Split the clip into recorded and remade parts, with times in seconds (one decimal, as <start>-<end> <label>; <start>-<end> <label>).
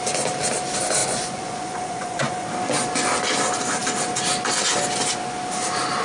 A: 0.0-1.0 recorded; 1.0-2.5 remade; 2.5-6.0 recorded